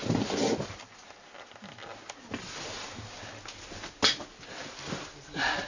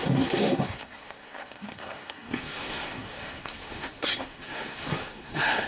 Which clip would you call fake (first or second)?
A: second